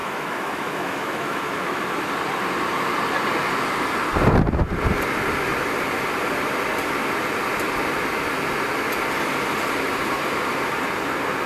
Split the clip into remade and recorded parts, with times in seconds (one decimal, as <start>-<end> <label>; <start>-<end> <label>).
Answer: 0.0-1.8 remade; 1.8-11.5 recorded